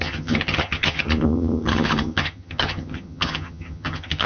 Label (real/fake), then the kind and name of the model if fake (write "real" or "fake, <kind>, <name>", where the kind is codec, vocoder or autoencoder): fake, vocoder, HiFi-GAN